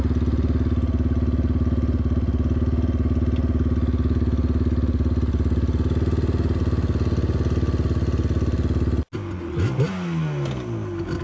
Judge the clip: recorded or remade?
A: recorded